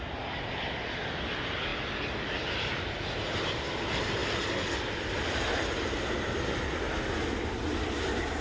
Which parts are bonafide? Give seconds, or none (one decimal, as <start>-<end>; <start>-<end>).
0.0-8.4